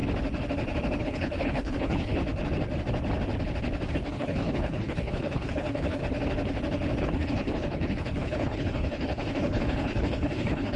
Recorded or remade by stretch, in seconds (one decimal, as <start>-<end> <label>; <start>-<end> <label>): 0.0-1.0 recorded; 1.0-2.2 remade; 2.2-3.9 recorded; 3.9-6.0 remade; 6.0-7.0 recorded; 7.0-10.8 remade